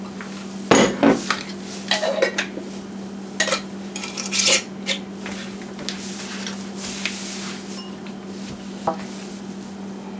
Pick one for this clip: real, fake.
real